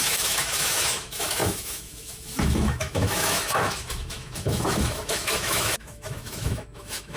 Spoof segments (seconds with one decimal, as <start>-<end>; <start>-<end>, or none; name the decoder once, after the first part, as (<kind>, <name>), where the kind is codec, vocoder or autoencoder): 0.0-7.2 (autoencoder, DAC-VAE)